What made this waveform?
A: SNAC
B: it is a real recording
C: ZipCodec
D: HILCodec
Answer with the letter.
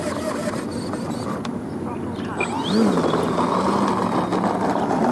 B